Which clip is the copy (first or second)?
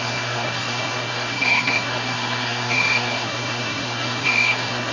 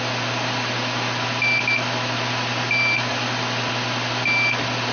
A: first